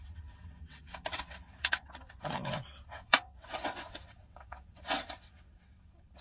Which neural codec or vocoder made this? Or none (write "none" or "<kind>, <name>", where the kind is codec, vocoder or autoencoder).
vocoder, WaveNeXt